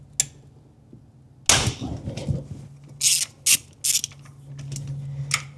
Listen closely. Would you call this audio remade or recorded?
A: recorded